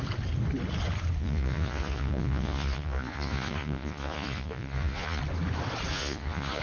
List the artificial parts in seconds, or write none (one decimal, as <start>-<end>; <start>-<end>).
1.2-5.2; 5.9-6.6